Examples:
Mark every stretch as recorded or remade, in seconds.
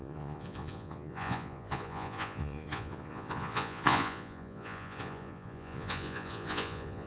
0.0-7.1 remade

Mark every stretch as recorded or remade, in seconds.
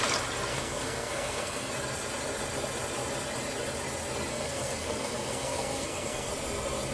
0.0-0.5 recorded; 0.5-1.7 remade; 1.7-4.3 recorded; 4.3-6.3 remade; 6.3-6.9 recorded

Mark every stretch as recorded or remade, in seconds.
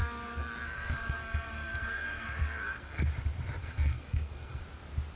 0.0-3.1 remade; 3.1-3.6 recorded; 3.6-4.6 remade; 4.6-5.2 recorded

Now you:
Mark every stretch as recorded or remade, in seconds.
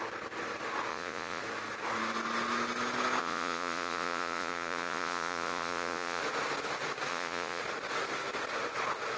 0.0-0.9 recorded; 0.9-1.4 remade; 1.4-3.2 recorded; 3.2-6.2 remade; 6.2-7.1 recorded; 7.1-7.6 remade; 7.6-9.2 recorded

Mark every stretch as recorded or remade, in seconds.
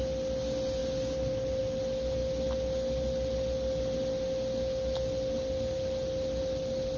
0.0-7.0 recorded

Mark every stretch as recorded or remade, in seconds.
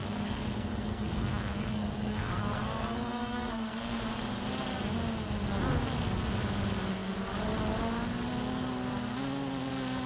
0.0-4.0 remade; 4.0-10.1 recorded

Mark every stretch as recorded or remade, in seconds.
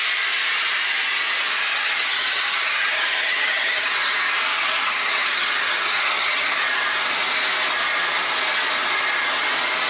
0.0-1.7 recorded; 1.7-3.9 remade; 3.9-4.5 recorded; 4.5-6.6 remade; 6.6-9.9 recorded